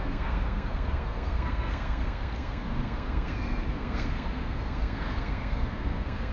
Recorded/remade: remade